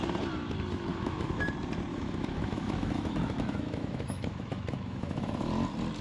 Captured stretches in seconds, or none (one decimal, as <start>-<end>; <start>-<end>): 0.0-0.9; 1.4-1.9; 5.5-6.0